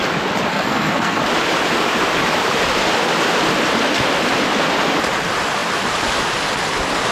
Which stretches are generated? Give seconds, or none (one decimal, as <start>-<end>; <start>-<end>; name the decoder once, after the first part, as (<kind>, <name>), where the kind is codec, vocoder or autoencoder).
0.5-1.2 (codec, SNAC)